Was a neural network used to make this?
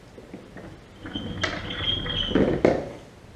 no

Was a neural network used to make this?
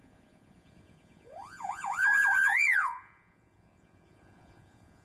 yes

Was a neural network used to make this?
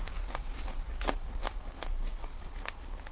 no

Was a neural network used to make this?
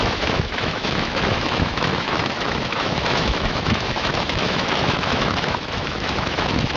yes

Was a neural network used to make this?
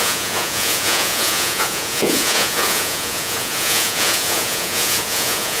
yes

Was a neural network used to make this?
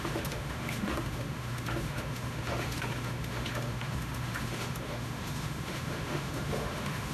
yes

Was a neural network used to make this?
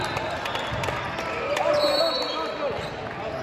no